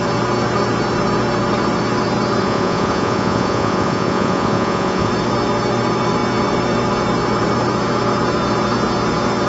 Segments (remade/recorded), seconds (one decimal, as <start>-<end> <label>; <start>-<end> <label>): 0.0-2.4 recorded; 2.4-5.1 remade; 5.1-9.5 recorded